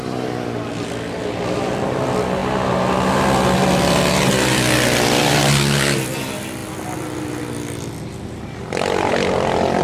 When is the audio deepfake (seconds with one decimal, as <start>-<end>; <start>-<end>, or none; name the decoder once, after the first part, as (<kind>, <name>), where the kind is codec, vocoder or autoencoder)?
none